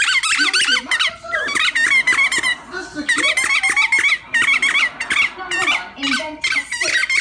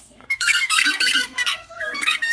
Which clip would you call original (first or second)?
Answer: first